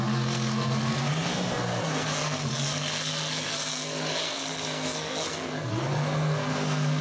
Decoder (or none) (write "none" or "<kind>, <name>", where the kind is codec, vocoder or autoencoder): codec, SNAC